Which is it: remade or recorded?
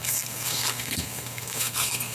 remade